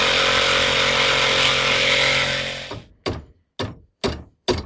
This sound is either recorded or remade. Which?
recorded